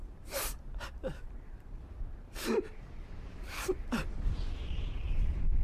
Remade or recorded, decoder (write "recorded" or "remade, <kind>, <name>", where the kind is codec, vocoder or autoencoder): remade, vocoder, BigVGAN v2